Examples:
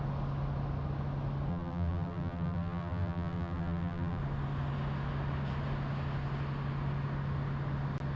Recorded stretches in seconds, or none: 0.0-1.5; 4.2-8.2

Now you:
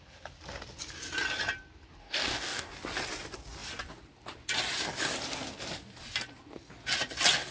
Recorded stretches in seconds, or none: 0.0-2.0; 2.7-7.5

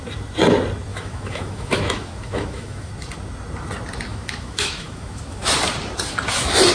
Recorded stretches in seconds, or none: 0.0-0.9; 2.9-4.1; 5.5-6.7

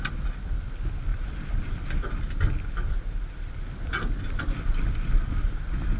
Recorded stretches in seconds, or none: 0.0-6.0

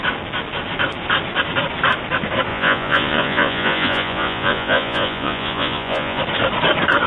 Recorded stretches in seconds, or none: 0.0-2.5; 6.2-7.1

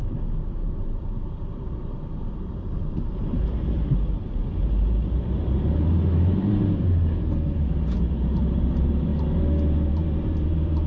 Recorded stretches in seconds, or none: 0.0-0.5; 9.1-9.9

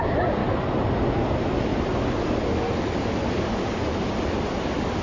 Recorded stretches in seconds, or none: 0.0-5.0